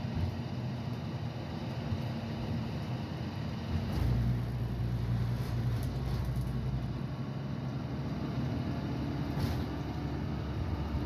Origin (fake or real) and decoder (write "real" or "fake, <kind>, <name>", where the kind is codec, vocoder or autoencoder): real